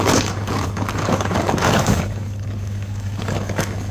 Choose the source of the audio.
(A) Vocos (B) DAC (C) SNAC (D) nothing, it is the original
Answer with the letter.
B